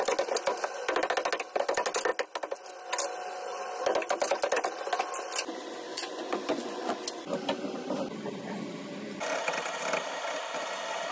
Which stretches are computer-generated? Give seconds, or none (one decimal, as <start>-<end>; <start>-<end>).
5.9-6.9